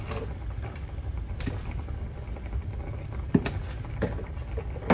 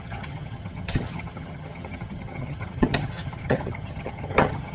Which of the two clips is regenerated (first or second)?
second